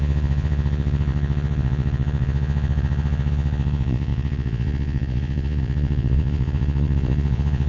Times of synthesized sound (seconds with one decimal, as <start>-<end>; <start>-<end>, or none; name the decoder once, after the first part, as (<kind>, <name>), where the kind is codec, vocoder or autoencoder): 0.0-7.7 (vocoder, Vocos)